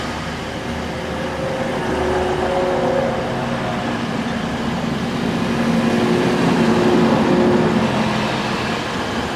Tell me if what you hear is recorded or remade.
recorded